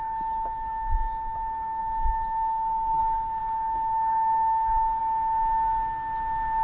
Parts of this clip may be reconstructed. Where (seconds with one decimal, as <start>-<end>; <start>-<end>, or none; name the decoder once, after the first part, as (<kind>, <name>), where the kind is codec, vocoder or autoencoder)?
1.8-3.0 (codec, DAC); 3.4-5.0